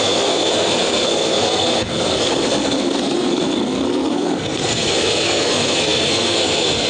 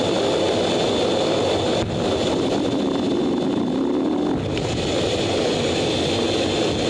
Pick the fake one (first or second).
first